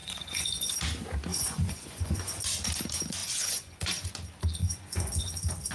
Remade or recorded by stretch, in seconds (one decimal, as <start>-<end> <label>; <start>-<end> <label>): 0.0-0.7 remade; 0.7-1.3 recorded; 1.3-2.4 remade; 2.4-3.2 recorded; 3.2-4.1 remade; 4.1-4.6 recorded; 4.6-5.3 remade; 5.3-5.7 recorded